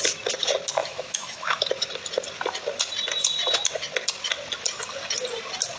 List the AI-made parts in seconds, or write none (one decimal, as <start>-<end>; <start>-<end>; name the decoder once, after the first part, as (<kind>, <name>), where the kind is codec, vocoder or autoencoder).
0.8-1.7 (autoencoder, DAC-VAE)